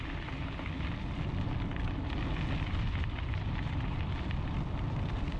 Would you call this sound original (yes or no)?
yes